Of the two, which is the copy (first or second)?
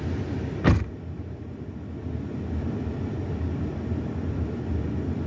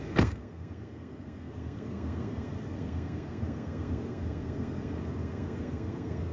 second